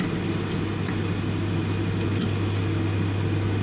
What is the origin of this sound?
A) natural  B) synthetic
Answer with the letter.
A